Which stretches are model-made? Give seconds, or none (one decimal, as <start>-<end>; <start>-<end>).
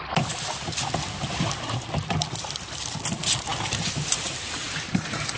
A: none